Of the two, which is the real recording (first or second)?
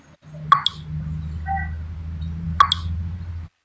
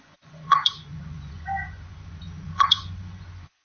first